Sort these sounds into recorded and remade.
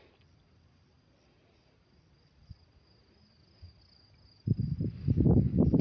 recorded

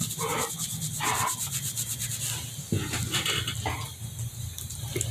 recorded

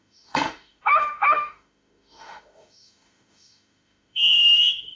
remade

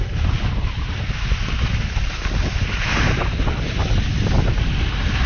recorded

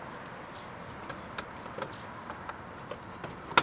recorded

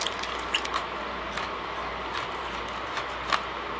recorded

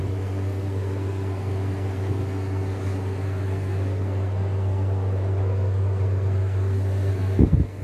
remade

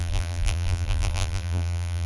remade